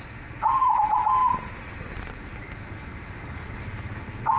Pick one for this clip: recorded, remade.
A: recorded